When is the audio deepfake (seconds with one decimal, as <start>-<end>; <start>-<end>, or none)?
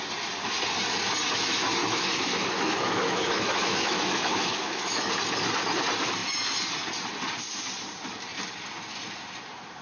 1.8-5.1